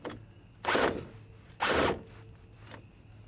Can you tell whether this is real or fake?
real